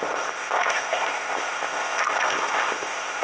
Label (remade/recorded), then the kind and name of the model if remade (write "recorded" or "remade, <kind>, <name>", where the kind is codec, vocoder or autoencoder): remade, codec, ZipCodec